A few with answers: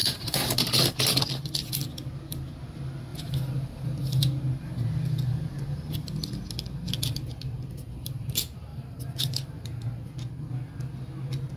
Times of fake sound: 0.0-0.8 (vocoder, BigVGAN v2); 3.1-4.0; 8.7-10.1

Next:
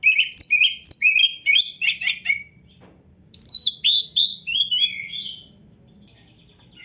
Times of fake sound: 1.2-3.3 (vocoder, BigVGAN v2); 4.3-5.5

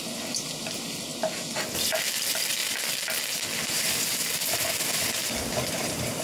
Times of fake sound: 0.0-1.1 (vocoder, BigVGAN v2); 1.7-2.6; 5.3-6.2